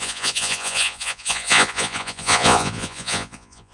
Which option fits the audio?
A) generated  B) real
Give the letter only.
A